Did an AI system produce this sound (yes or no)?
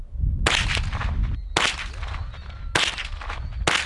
no